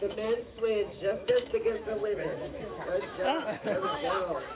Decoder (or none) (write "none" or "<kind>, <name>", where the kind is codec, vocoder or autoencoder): autoencoder, DAC-VAE